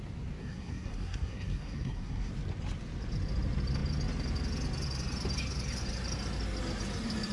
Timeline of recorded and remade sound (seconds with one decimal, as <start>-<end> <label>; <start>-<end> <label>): 0.0-0.4 recorded; 0.4-2.3 remade; 2.3-7.3 recorded